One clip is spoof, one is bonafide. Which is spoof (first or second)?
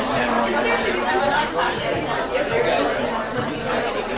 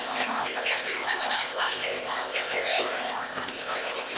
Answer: second